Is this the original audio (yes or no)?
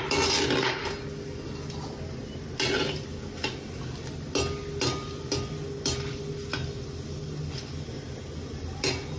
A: yes